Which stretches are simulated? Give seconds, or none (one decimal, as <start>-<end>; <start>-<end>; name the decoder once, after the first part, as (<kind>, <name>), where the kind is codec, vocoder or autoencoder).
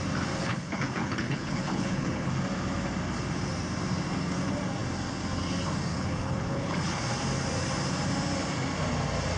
0.4-2.3 (codec, HILCodec); 5.9-7.0